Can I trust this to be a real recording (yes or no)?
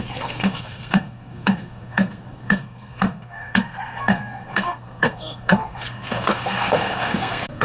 no